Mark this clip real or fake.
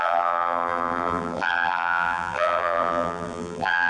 fake